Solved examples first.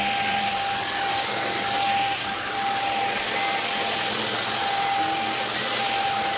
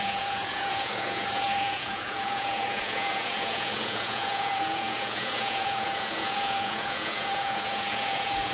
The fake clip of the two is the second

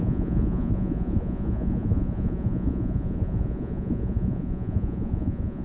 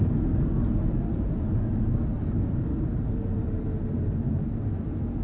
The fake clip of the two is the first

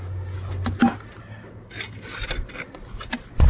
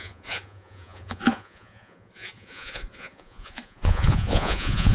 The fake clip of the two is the second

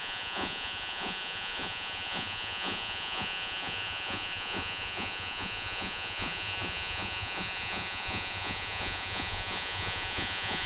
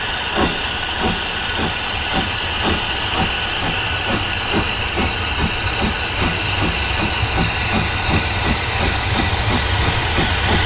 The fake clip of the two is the first